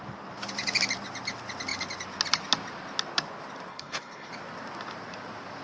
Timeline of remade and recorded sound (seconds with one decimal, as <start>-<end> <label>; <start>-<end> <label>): 0.0-3.7 recorded; 3.7-4.3 remade; 4.3-5.6 recorded